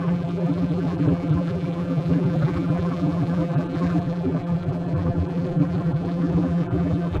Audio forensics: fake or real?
fake